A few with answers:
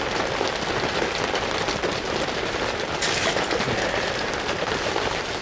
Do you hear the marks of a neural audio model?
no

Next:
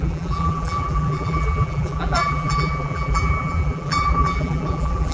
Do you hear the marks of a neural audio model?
yes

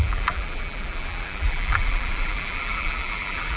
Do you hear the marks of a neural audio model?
yes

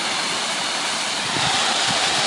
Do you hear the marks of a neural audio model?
no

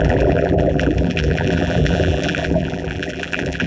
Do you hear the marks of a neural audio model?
yes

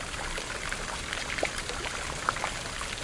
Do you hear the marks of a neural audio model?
yes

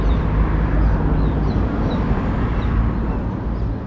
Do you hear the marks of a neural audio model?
no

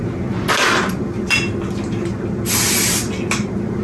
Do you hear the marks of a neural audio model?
no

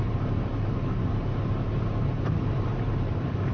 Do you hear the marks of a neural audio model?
yes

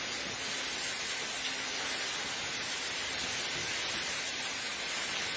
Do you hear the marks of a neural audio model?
no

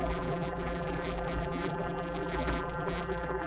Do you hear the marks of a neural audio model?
yes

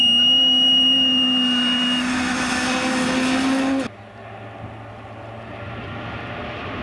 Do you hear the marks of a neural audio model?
no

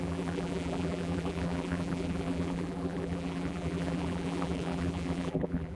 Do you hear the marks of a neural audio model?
yes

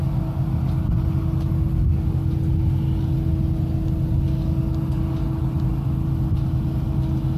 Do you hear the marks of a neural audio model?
yes